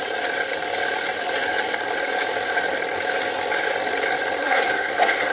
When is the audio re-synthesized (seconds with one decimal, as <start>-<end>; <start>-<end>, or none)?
4.4-5.3